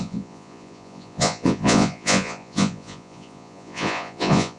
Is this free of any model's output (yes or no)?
no